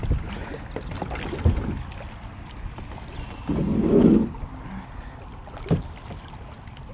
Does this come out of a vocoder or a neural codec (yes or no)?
no